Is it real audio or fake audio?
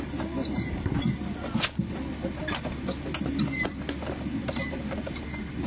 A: real